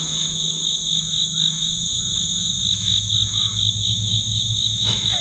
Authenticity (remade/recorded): remade